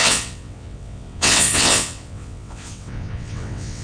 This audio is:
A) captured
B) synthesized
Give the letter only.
B